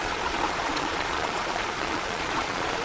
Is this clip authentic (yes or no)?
no